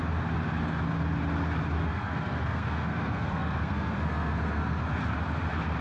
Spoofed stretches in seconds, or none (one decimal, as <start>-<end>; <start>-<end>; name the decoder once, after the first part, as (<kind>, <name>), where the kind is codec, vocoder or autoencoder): 1.9-4.8 (codec, SNAC)